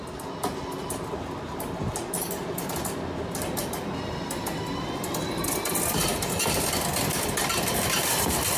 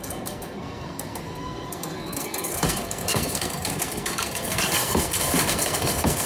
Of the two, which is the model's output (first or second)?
second